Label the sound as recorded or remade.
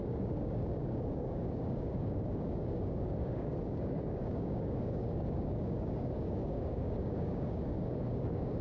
remade